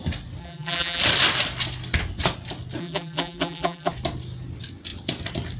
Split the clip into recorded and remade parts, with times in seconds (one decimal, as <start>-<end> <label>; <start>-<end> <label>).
0.0-0.4 recorded; 0.4-1.0 remade; 1.0-2.8 recorded; 2.8-3.9 remade; 3.9-5.6 recorded